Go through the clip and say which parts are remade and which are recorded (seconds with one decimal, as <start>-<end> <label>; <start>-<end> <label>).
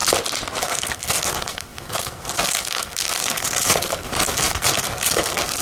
0.0-0.6 recorded; 0.6-5.6 remade